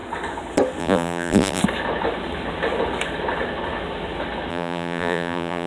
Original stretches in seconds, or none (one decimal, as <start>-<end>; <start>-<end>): 0.0-0.8; 1.6-4.5